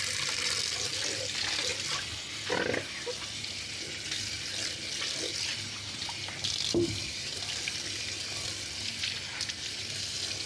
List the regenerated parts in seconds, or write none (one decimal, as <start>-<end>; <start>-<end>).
none